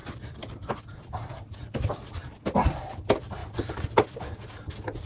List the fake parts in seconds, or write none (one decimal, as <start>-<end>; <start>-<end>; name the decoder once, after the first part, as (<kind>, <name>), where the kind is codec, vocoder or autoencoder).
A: 3.4-3.9 (vocoder, BigVGAN v2)